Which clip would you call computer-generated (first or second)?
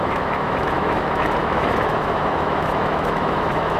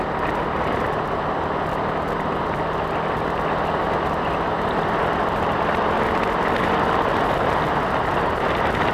first